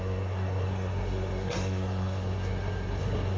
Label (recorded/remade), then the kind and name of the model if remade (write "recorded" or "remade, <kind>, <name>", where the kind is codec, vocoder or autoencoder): remade, codec, SNAC